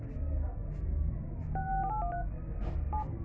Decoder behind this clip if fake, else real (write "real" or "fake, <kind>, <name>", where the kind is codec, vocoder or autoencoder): real